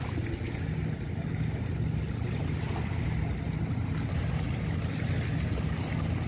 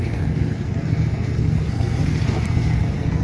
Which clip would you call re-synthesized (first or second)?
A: second